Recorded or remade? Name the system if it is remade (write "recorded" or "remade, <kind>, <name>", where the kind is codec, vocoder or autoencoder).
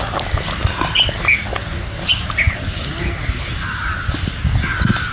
recorded